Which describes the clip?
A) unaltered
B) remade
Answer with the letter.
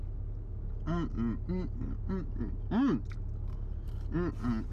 A